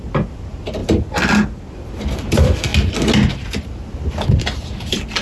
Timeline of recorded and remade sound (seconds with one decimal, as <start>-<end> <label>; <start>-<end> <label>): 0.0-0.8 remade; 0.8-2.1 recorded; 2.1-2.7 remade; 2.7-3.3 recorded; 3.3-5.2 remade